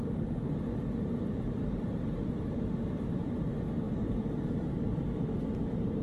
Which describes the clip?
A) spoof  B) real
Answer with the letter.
B